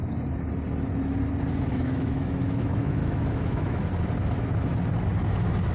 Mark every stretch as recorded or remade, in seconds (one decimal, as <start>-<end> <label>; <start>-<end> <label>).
0.0-1.7 recorded; 1.7-3.8 remade; 3.8-5.7 recorded